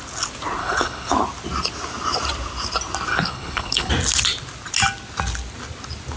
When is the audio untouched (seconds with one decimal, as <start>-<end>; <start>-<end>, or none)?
0.0-0.6; 1.1-3.1; 3.9-6.2